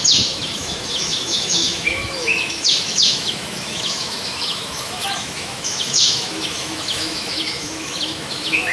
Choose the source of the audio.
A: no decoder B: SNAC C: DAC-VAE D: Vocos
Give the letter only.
C